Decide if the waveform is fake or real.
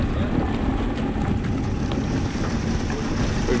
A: real